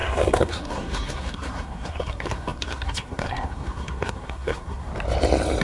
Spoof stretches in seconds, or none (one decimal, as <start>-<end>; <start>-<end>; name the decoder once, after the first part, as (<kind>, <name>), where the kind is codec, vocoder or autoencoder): 0.0-4.9 (codec, SNAC)